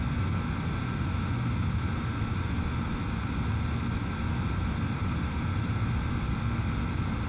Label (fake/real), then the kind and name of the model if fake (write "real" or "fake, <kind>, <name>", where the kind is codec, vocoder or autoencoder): real